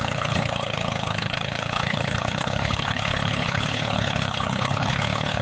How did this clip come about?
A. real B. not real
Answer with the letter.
B